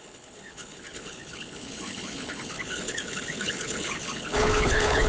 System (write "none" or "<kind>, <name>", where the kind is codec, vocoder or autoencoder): codec, HILCodec